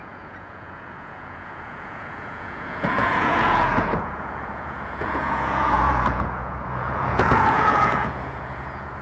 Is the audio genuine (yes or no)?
no